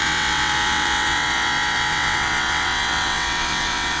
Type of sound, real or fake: fake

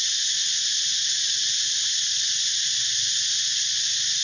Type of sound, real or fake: real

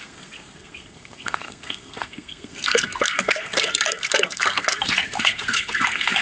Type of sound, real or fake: fake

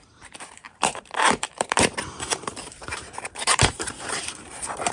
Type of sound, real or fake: fake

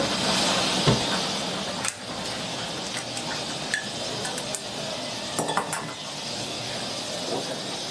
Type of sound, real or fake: real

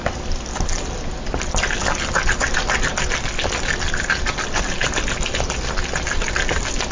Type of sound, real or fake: real